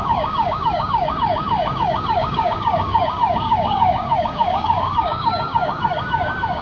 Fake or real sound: fake